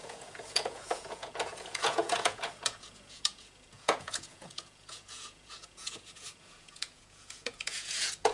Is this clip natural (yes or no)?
no